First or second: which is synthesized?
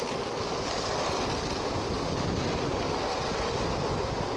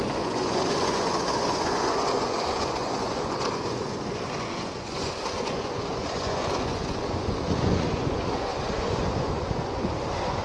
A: second